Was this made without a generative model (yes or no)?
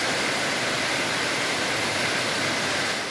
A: yes